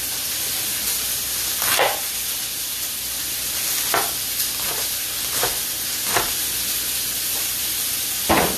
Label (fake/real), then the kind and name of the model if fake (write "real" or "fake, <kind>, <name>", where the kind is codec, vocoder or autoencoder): real